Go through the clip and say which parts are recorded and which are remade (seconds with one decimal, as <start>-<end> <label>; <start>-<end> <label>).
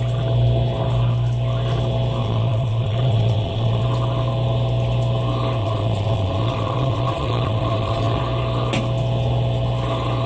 0.0-2.2 recorded; 2.2-3.8 remade; 3.8-5.6 recorded; 5.6-8.2 remade; 8.2-10.3 recorded